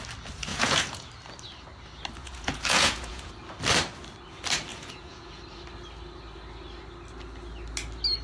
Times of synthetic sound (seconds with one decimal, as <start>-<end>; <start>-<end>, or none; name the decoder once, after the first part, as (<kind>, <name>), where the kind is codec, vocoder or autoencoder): 0.5-1.1 (vocoder, Vocos); 2.2-3.3; 4.7-5.4